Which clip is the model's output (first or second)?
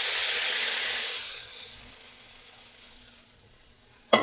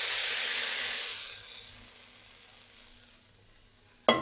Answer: first